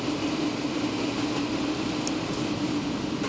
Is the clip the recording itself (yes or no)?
yes